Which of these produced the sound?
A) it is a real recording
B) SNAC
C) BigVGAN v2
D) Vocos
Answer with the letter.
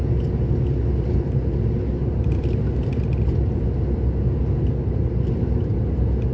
A